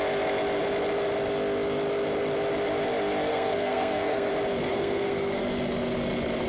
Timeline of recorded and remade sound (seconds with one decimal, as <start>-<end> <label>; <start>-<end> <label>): 0.0-3.3 recorded; 3.3-4.3 remade; 4.3-4.7 recorded; 4.7-5.4 remade; 5.4-6.5 recorded